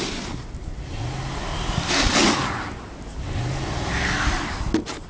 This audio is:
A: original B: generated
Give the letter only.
A